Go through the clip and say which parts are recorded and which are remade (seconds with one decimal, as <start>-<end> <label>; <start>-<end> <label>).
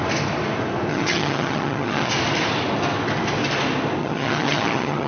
0.0-0.9 recorded; 0.9-2.1 remade; 2.1-4.0 recorded; 4.0-5.1 remade